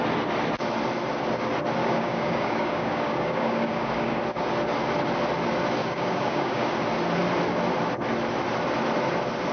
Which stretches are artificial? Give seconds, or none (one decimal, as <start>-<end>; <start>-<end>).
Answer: 1.8-4.2; 5.8-6.7